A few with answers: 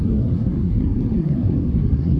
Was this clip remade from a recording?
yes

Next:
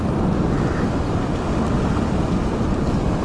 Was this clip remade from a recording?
no